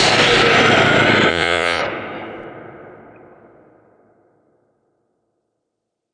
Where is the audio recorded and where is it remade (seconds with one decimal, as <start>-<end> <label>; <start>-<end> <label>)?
0.0-1.3 recorded; 1.3-1.8 remade; 1.8-6.1 recorded